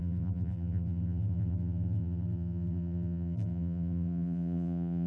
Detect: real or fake fake